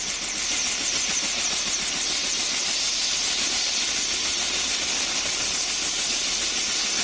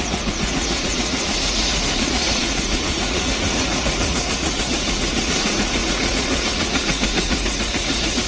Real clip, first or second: first